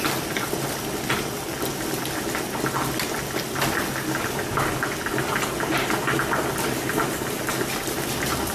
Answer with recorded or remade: recorded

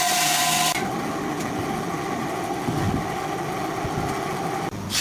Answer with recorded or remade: recorded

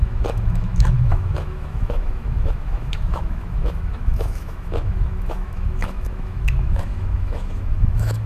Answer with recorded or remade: remade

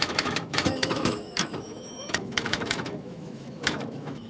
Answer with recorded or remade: remade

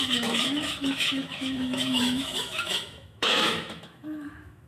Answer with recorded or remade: remade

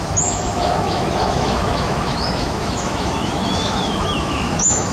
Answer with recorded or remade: remade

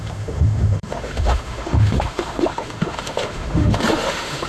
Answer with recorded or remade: remade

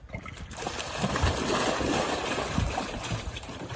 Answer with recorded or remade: recorded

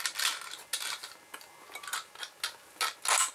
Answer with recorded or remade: recorded